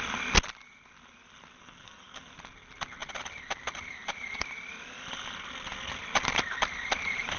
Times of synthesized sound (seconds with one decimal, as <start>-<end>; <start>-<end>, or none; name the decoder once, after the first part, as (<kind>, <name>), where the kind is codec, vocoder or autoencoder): 1.5-2.2 (codec, SNAC)